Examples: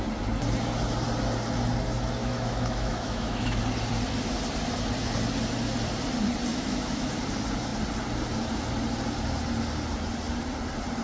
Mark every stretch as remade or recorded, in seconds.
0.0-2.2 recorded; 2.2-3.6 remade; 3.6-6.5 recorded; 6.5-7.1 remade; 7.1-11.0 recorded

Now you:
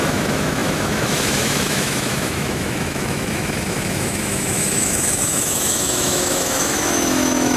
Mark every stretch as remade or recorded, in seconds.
0.0-7.6 remade

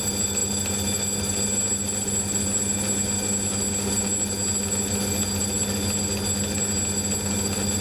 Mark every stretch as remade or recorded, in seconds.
0.0-7.8 recorded

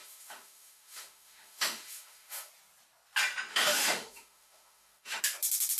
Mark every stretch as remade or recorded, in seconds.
0.0-2.5 remade; 2.5-3.5 recorded; 3.5-5.2 remade; 5.2-5.8 recorded

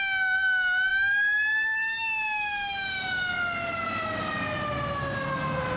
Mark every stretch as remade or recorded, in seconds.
0.0-0.9 recorded; 0.9-3.3 remade; 3.3-5.8 recorded

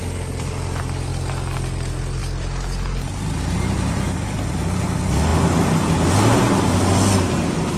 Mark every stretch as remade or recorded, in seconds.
0.0-7.8 recorded

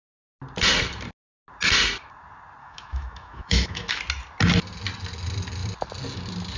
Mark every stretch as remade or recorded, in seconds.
0.0-2.6 recorded; 2.6-4.0 remade; 4.0-6.6 recorded

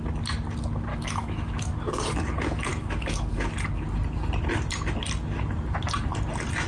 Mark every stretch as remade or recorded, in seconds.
0.0-0.9 recorded; 0.9-1.8 remade; 1.8-2.7 recorded; 2.7-3.5 remade; 3.5-6.7 recorded